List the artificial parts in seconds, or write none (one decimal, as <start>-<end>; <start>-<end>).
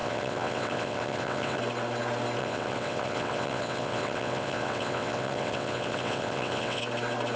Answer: 0.0-1.6; 2.4-6.8